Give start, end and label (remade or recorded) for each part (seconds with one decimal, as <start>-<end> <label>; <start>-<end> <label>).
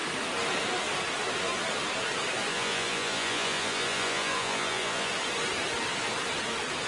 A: 0.0-2.5 recorded; 2.5-5.1 remade; 5.1-6.9 recorded